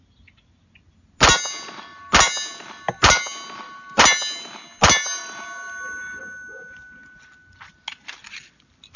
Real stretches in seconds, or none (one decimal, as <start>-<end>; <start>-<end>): 0.0-9.0